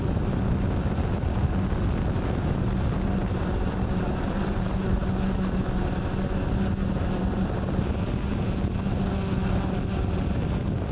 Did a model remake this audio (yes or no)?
no